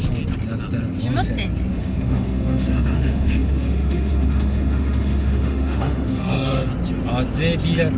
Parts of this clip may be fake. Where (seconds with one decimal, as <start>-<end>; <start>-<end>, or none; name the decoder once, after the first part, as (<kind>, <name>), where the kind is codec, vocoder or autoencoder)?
1.7-6.7 (autoencoder, DAC-VAE)